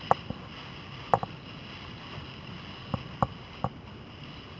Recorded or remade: recorded